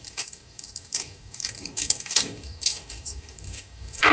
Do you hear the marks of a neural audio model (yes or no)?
yes